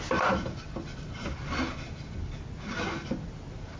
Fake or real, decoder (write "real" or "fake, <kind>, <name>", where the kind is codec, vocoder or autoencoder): real